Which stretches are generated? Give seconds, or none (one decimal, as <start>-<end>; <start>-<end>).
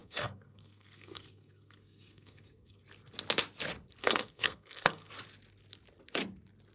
0.0-2.8; 4.0-5.1